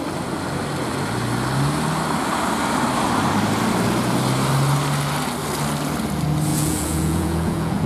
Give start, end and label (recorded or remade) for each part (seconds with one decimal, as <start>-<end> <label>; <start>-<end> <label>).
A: 0.0-6.5 recorded; 6.5-7.9 remade